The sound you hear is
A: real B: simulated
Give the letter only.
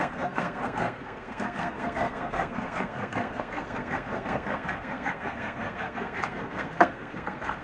B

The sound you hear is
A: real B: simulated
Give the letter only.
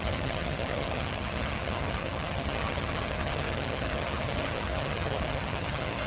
B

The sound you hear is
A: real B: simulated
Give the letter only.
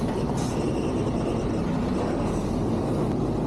A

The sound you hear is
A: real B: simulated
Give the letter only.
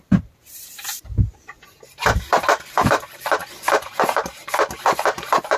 B